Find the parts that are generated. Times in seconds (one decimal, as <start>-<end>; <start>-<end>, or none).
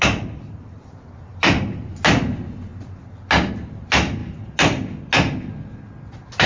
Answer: none